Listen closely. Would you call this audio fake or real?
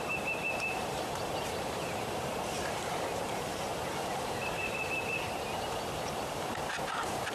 fake